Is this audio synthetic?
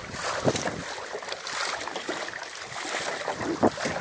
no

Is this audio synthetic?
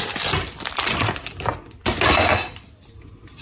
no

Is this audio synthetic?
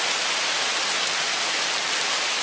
no